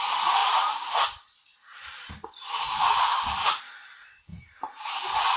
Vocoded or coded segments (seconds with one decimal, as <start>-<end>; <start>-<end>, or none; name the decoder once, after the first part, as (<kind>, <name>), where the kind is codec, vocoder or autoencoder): 0.4-3.6 (vocoder, BigVGAN v2); 4.3-5.4